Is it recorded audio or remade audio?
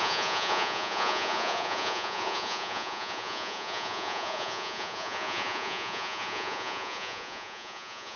remade